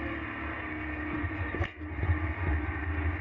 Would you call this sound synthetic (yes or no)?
no